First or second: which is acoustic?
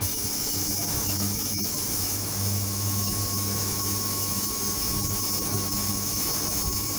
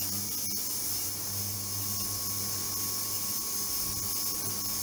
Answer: second